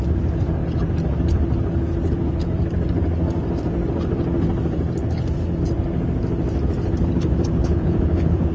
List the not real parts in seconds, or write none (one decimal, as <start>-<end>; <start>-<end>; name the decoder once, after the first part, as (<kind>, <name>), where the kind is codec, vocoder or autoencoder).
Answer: 7.6-8.5 (vocoder, Vocos)